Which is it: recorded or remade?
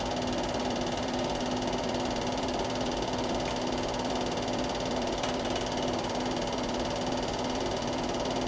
remade